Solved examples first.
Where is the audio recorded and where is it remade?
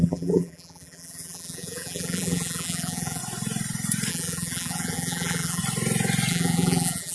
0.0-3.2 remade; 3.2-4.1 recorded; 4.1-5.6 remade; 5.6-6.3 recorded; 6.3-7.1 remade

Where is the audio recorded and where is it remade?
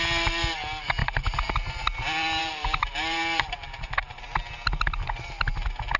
0.0-1.0 recorded; 1.0-1.5 remade; 1.5-2.4 recorded; 2.4-4.2 remade; 4.2-6.0 recorded